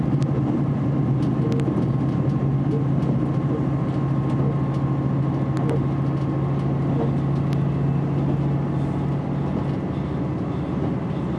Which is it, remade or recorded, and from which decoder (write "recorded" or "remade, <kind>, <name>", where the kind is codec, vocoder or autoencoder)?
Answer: recorded